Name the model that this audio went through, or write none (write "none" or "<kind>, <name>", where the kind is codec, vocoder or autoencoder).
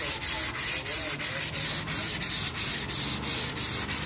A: none